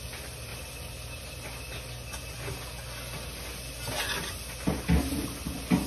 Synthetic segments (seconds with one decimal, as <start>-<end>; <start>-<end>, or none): none